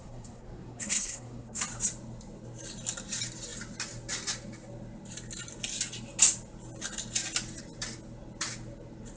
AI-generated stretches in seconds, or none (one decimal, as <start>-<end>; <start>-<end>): 0.0-1.6